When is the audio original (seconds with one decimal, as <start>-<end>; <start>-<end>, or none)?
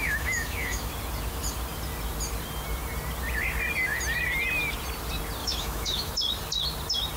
0.9-5.4; 6.1-7.2